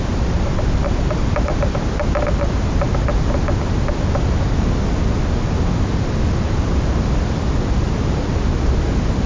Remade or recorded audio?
recorded